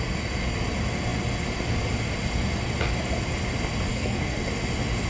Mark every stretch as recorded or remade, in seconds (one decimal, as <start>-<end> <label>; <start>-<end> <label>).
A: 0.0-3.9 recorded; 3.9-4.5 remade; 4.5-5.1 recorded